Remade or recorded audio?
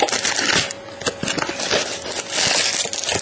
recorded